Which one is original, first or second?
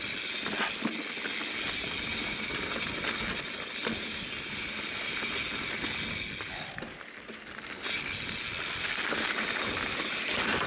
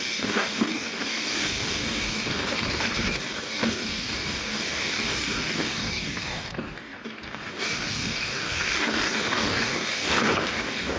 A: first